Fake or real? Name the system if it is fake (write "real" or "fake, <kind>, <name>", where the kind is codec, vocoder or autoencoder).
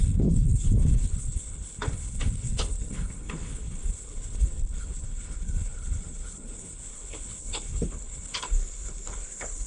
fake, codec, HILCodec